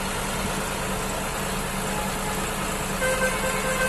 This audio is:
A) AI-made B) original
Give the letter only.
B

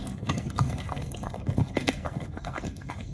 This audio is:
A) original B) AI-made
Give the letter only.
B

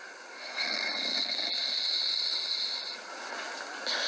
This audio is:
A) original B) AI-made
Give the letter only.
A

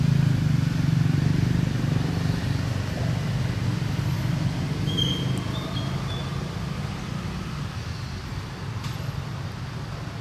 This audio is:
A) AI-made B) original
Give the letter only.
B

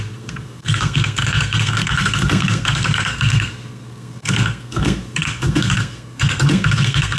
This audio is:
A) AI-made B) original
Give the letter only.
A